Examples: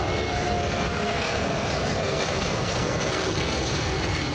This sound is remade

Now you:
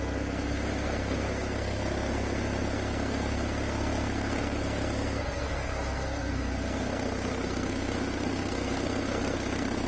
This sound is remade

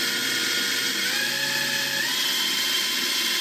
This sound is recorded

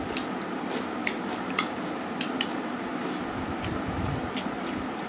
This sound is recorded